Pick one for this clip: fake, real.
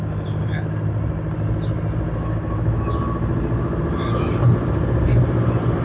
real